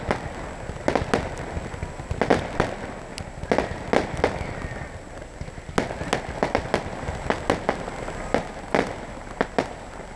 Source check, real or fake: real